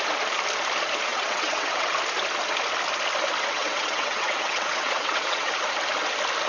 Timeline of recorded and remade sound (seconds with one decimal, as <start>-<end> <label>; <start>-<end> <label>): 0.0-1.1 recorded; 1.1-1.9 remade; 1.9-3.5 recorded; 3.5-5.5 remade; 5.5-6.5 recorded